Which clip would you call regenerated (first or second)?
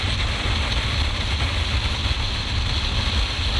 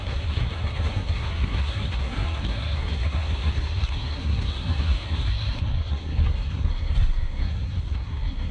second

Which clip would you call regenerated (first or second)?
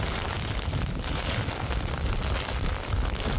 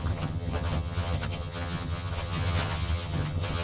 second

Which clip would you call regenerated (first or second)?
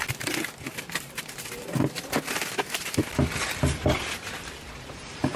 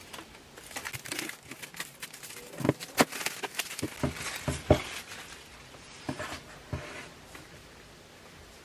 first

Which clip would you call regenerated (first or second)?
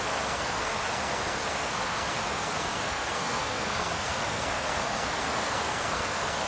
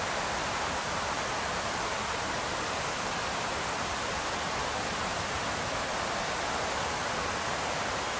first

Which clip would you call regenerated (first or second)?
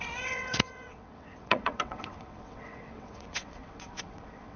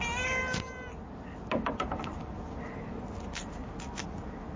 first